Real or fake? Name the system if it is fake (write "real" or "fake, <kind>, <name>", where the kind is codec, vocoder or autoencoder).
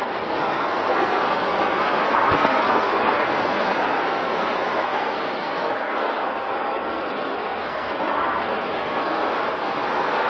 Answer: fake, codec, SNAC